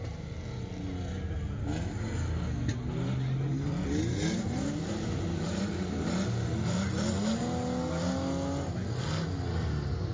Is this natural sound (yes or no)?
yes